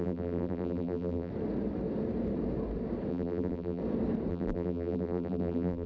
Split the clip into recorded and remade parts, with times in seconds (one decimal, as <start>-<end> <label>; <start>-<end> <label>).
0.0-1.3 remade; 1.3-3.1 recorded; 3.1-3.8 remade; 3.8-4.3 recorded; 4.3-5.9 remade